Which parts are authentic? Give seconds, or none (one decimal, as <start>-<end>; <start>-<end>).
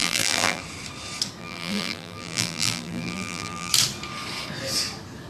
0.6-1.4; 3.7-5.3